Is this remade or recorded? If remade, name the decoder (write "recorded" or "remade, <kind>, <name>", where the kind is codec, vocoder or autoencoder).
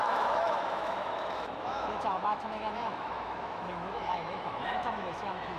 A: remade, autoencoder, DAC-VAE